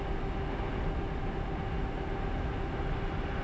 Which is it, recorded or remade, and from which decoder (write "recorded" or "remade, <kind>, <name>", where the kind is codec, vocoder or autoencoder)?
recorded